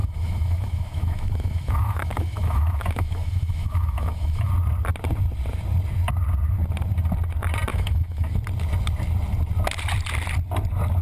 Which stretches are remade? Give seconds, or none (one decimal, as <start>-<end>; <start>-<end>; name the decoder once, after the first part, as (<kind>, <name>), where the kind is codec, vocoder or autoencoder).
0.0-4.5 (autoencoder, DAC-VAE); 7.7-8.4